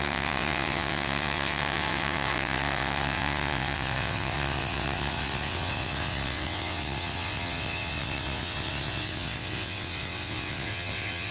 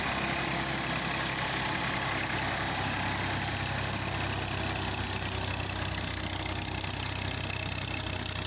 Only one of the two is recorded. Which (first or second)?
second